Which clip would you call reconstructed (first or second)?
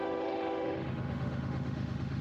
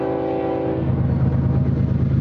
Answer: first